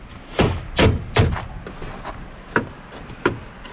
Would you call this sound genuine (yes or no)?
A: yes